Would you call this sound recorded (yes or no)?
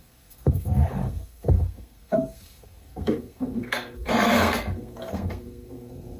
no